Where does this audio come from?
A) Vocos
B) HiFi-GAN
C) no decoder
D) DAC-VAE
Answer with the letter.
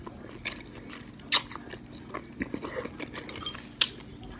C